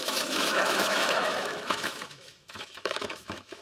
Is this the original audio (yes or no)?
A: no